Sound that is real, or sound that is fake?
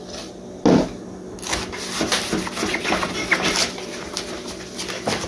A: real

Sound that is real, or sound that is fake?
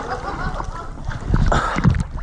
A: real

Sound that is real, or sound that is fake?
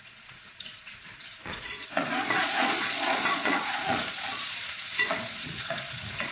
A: fake